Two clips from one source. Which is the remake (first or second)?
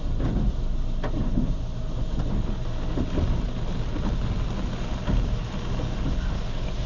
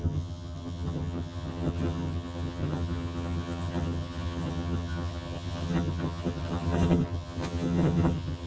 second